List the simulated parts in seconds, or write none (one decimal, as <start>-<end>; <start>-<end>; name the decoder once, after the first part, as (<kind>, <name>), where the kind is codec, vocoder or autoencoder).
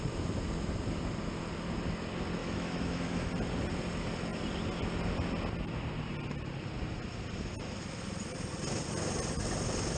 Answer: 2.4-3.3 (autoencoder, DAC-VAE)